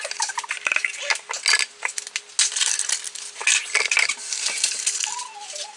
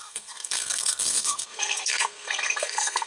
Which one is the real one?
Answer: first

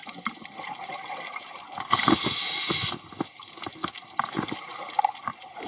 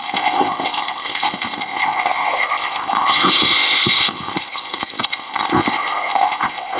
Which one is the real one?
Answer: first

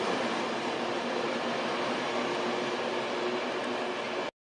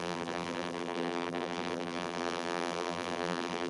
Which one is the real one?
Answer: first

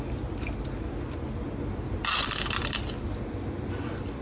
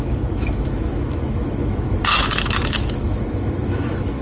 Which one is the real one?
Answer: first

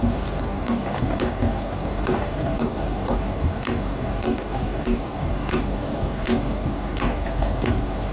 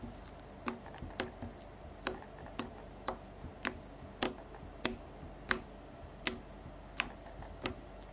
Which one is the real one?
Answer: second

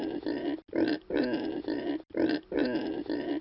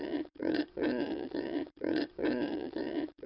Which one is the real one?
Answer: first